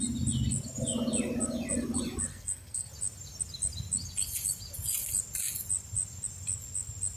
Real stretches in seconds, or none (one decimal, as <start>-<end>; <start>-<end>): 0.0-2.3; 2.9-7.2